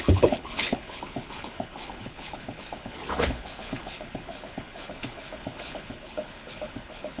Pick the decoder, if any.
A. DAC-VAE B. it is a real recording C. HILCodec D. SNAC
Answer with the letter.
C